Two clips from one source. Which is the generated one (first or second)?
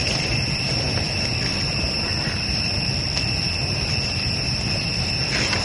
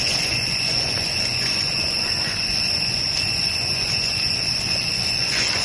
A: second